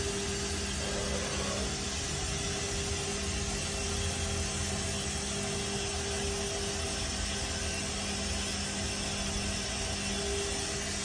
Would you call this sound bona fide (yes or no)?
yes